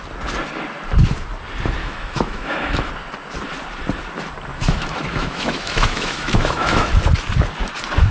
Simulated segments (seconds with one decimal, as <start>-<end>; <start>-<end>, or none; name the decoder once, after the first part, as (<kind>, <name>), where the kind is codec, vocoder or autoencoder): 1.8-2.9 (autoencoder, DAC-VAE); 4.5-6.9